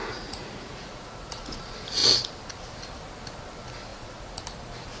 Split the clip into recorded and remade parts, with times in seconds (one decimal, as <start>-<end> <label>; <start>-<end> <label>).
0.0-1.6 remade; 1.6-3.9 recorded; 3.9-4.4 remade; 4.4-5.0 recorded